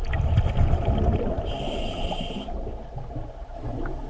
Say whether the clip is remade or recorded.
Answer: recorded